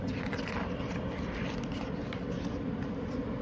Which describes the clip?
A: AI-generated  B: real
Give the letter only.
A